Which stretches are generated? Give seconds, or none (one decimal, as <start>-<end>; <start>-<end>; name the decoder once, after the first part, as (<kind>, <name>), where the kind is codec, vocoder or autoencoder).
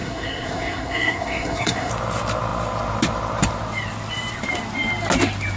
0.0-1.9 (codec, SNAC)